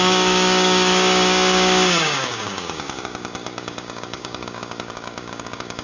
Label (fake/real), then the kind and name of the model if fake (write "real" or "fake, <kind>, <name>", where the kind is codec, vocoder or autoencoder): fake, codec, DAC